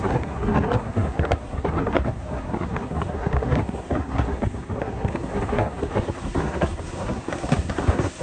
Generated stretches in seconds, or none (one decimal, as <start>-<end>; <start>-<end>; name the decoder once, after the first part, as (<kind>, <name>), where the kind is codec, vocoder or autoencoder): 0.0-8.2 (codec, SNAC)